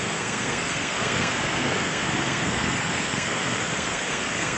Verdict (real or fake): fake